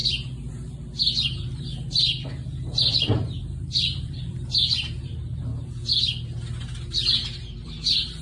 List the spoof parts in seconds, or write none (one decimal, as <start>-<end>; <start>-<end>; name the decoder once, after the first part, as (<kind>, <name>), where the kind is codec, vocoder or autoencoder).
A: 0.0-5.5 (vocoder, BigVGAN v2); 6.8-8.2